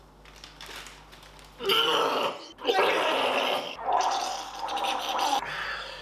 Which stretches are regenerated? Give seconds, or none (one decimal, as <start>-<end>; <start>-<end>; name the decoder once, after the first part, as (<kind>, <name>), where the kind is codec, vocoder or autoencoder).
0.0-6.0 (vocoder, BigVGAN v2)